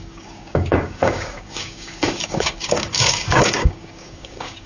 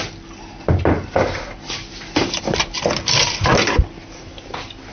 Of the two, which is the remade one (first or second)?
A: first